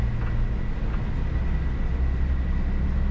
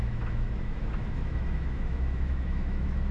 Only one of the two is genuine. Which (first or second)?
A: first